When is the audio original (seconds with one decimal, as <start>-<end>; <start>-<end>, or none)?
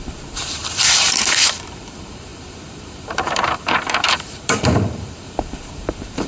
none